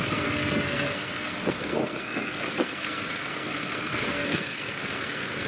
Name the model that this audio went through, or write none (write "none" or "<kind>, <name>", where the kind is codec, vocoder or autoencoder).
codec, SNAC